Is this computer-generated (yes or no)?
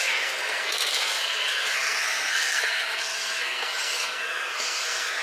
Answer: yes